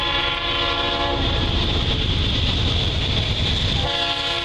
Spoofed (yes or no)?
yes